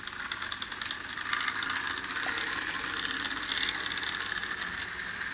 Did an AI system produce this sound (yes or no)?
no